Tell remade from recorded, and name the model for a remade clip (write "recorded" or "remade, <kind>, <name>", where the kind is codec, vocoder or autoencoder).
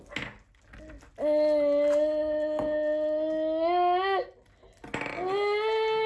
recorded